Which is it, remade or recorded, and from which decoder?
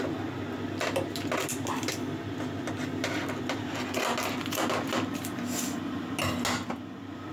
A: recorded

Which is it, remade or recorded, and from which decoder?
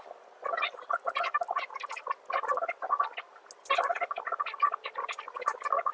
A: recorded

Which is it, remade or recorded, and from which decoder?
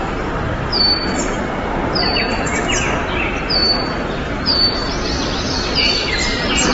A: remade, vocoder, BigVGAN v2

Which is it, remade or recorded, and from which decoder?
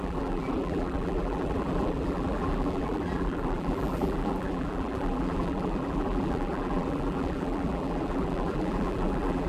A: remade, vocoder, BigVGAN v2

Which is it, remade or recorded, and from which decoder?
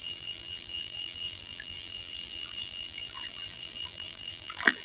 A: remade, vocoder, BigVGAN v2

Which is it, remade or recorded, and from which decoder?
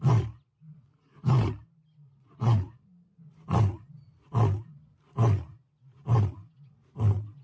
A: recorded